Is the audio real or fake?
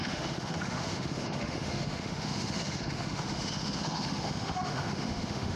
fake